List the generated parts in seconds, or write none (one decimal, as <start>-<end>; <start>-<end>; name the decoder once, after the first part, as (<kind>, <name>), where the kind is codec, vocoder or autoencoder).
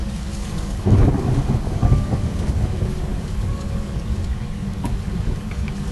0.0-5.9 (codec, DAC)